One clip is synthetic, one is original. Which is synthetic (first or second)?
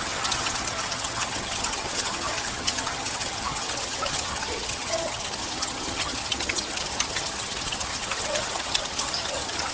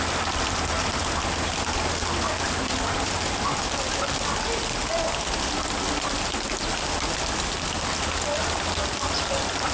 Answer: first